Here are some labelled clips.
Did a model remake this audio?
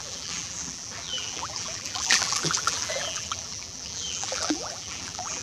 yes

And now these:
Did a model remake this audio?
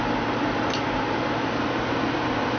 yes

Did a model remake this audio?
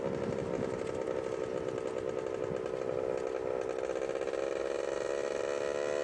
no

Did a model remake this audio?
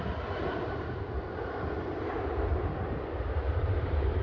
yes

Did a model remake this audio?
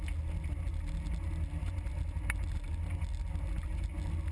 no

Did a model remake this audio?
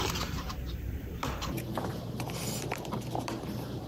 yes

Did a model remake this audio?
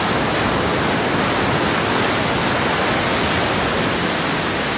no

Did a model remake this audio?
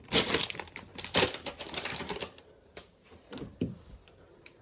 yes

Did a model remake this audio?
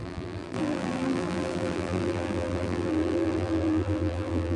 yes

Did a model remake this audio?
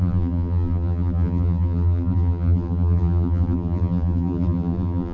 yes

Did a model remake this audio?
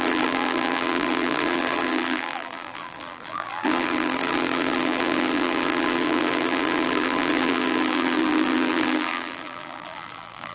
yes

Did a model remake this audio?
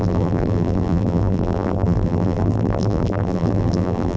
yes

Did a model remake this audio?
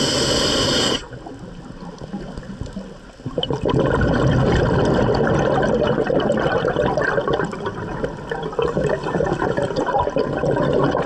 no